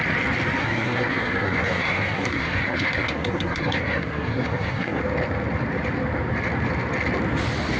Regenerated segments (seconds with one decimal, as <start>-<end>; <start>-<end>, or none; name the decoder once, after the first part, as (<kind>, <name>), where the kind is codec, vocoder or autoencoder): 0.6-5.0 (codec, SNAC)